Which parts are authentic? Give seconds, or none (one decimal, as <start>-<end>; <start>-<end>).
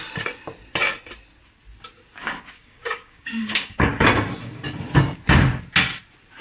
0.0-2.2; 3.9-6.4